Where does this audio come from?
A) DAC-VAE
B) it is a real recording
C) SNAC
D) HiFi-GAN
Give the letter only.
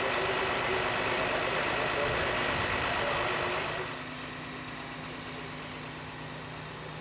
B